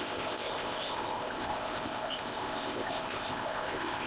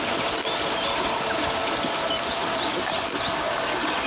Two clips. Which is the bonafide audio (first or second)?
second